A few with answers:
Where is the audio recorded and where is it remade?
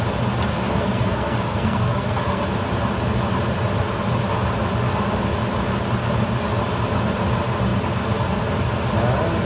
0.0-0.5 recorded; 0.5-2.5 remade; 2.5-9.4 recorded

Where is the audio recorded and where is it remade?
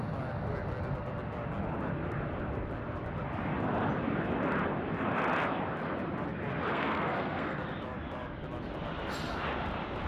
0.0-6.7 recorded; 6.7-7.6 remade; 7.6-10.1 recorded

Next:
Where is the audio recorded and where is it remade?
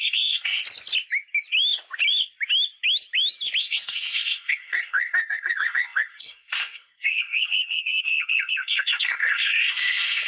0.0-0.6 remade; 0.6-3.6 recorded; 3.6-10.3 remade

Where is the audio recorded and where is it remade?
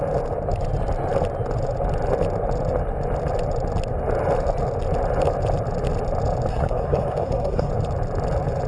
0.0-6.5 recorded; 6.5-7.7 remade; 7.7-8.7 recorded